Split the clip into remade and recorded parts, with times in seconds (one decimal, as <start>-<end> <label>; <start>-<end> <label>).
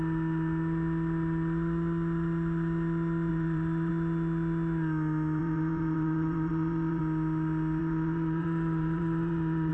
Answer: 0.0-3.3 recorded; 3.3-3.9 remade; 3.9-5.4 recorded; 5.4-7.0 remade; 7.0-7.8 recorded; 7.8-9.7 remade